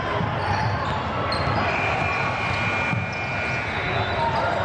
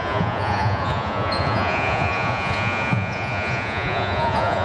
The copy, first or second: second